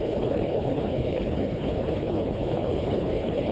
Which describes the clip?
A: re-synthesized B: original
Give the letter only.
A